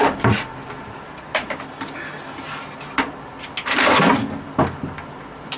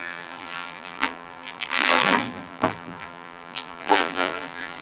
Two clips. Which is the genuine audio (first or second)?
first